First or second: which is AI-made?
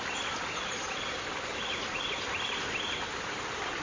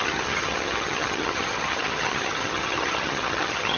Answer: second